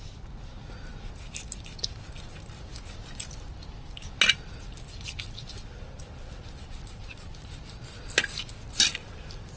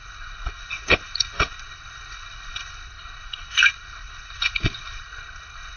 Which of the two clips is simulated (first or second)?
second